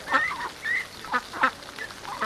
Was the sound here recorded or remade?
recorded